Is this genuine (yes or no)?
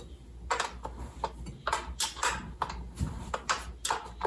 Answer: yes